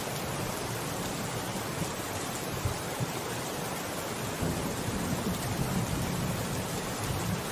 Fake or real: real